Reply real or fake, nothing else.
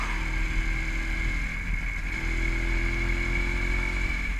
real